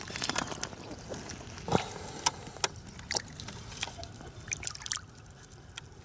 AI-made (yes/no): no